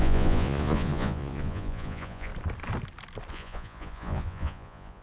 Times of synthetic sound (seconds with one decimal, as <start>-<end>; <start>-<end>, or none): 0.0-2.3; 3.3-5.0

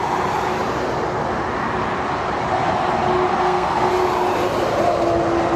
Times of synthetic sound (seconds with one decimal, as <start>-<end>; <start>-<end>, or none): 3.3-3.9

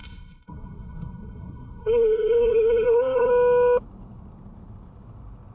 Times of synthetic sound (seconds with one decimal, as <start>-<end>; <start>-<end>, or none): 0.0-3.3

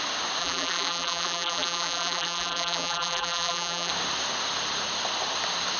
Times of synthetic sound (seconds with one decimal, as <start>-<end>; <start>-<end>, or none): 0.4-3.9